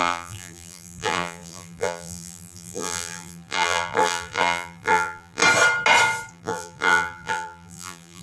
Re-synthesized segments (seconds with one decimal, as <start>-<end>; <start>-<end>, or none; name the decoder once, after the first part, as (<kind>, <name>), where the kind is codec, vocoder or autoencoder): 0.0-5.4 (vocoder, BigVGAN v2); 6.3-8.2